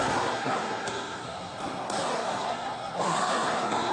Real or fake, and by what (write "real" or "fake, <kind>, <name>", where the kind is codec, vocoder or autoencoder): fake, codec, SNAC